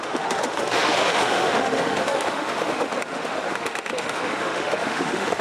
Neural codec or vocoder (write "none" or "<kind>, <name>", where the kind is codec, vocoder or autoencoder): autoencoder, DAC-VAE